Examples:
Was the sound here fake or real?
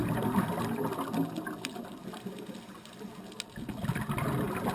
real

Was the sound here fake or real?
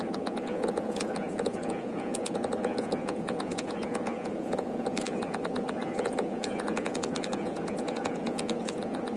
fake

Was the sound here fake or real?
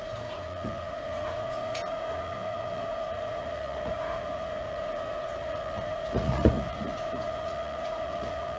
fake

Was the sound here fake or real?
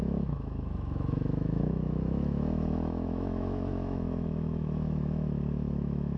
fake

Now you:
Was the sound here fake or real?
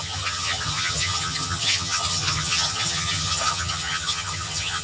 fake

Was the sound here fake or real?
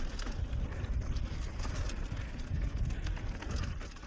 real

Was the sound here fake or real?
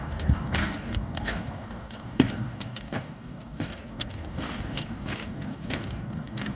fake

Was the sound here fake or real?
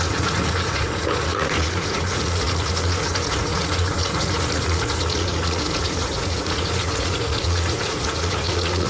fake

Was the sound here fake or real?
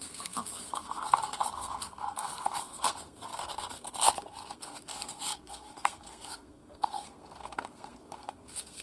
fake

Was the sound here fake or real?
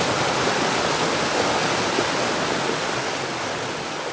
real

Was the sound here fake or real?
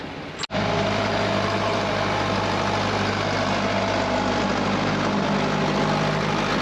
real